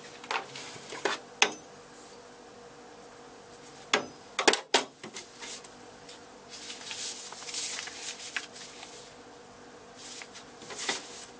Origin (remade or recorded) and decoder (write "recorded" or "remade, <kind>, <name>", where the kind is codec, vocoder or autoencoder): recorded